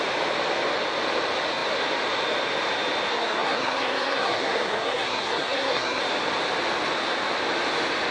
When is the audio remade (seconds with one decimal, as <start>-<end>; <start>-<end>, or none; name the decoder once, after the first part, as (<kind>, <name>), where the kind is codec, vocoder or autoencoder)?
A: 3.1-6.0 (codec, SNAC)